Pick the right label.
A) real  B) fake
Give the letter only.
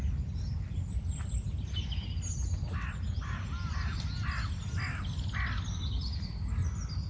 A